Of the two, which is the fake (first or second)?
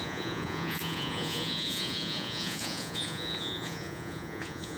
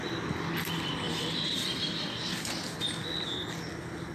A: first